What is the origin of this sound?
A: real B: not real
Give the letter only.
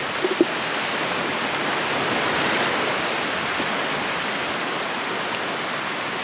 A